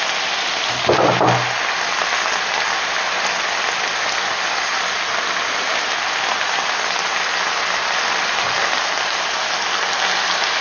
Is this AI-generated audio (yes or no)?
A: no